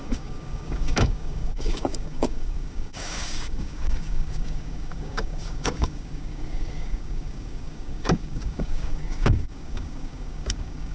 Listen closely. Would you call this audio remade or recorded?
remade